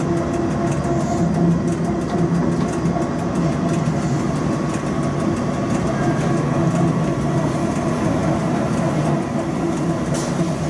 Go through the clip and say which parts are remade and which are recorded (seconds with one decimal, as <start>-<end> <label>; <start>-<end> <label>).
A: 0.0-10.7 recorded